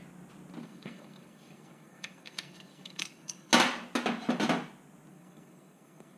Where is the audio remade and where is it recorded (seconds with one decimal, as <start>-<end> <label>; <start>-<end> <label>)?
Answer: 0.0-0.6 recorded; 0.6-3.5 remade; 3.5-5.1 recorded; 5.1-6.2 remade